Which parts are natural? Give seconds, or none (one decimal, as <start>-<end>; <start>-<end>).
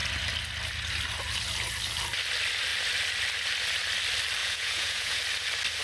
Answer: 0.0-4.4; 5.2-5.8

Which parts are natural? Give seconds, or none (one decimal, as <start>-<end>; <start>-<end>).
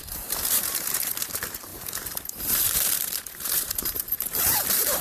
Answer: none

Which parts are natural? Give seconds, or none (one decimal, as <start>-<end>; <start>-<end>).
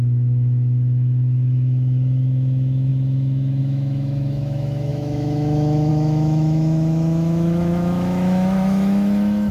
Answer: none